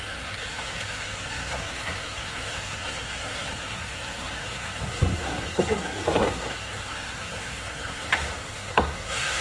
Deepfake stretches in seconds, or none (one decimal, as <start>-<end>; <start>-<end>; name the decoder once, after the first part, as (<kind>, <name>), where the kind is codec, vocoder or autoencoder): 0.0-9.4 (codec, SNAC)

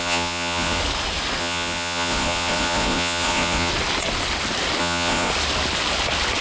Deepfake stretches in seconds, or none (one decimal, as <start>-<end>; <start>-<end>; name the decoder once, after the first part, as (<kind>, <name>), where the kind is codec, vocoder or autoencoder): 0.0-0.8 (vocoder, Vocos); 1.4-3.7; 4.8-5.3